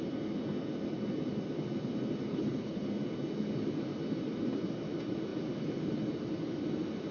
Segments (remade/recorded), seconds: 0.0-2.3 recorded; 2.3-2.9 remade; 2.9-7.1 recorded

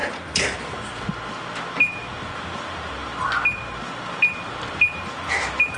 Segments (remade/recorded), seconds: 0.0-5.8 recorded

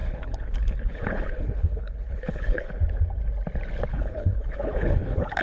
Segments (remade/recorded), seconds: 0.0-2.8 remade; 2.8-3.9 recorded; 3.9-5.4 remade

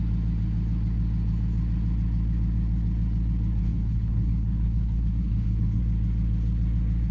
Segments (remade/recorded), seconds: 0.0-3.6 recorded; 3.6-5.8 remade; 5.8-7.1 recorded

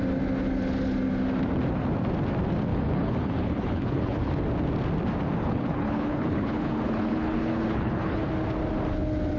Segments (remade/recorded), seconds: 0.0-2.7 recorded; 2.7-4.3 remade; 4.3-5.4 recorded; 5.4-8.3 remade; 8.3-9.4 recorded

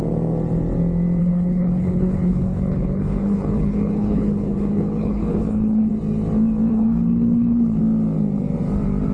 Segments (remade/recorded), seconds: 0.0-1.2 recorded; 1.2-5.9 remade; 5.9-6.7 recorded; 6.7-7.8 remade; 7.8-9.1 recorded